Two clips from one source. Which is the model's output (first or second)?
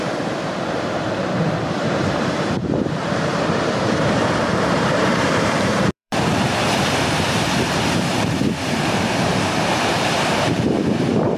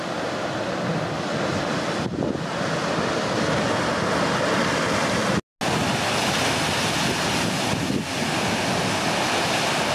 first